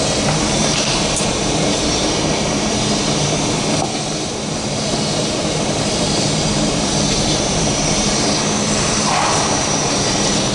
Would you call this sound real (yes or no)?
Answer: no